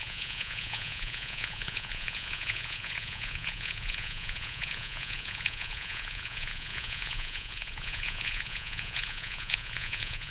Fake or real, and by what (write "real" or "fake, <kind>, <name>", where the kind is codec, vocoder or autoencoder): fake, vocoder, Vocos